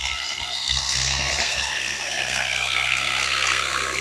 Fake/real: fake